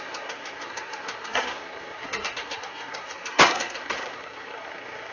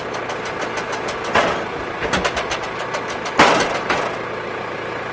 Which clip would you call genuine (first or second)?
second